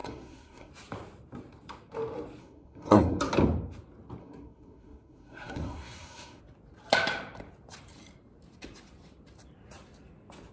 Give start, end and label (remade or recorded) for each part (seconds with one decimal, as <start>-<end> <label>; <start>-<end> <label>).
0.0-0.7 remade; 0.7-2.4 recorded; 2.4-3.2 remade; 3.2-4.2 recorded; 4.2-6.4 remade; 6.4-10.5 recorded